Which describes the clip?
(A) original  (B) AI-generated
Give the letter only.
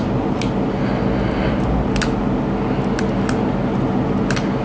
A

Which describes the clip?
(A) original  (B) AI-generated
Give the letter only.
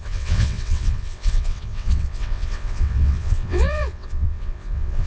B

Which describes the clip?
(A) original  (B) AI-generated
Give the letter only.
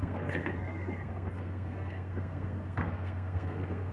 B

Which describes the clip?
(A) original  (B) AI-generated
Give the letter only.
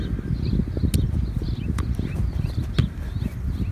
A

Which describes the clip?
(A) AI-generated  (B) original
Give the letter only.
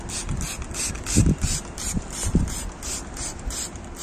B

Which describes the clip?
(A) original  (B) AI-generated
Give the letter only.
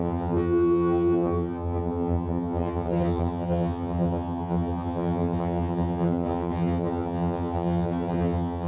B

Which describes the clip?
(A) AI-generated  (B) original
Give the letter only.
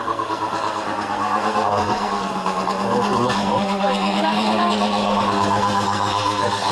A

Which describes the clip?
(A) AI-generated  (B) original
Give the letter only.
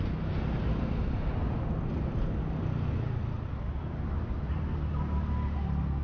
B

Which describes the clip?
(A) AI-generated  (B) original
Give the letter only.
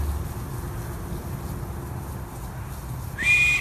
B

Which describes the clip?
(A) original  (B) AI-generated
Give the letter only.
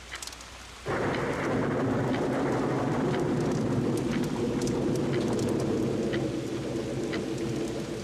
A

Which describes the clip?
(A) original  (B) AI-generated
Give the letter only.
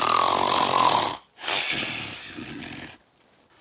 A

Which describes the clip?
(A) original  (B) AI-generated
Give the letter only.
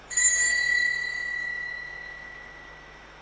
B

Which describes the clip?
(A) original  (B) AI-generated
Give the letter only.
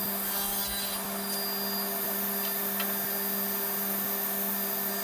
A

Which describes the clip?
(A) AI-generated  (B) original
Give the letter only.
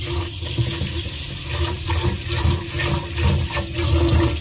B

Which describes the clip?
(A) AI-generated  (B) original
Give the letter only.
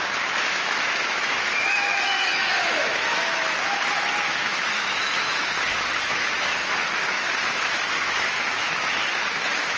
A